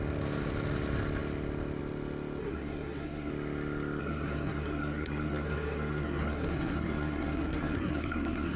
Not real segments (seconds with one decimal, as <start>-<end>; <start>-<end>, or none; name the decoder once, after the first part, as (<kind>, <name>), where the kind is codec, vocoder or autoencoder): 2.4-3.3 (codec, SNAC); 4.0-8.6